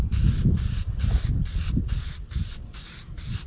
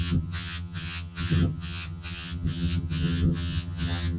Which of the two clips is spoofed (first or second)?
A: second